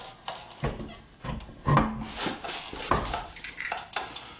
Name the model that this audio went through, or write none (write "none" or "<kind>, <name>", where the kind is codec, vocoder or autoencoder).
none